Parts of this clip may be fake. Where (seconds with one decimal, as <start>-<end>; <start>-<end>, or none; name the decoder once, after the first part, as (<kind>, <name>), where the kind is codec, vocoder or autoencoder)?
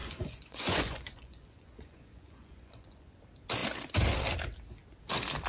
0.0-3.2 (vocoder, Vocos)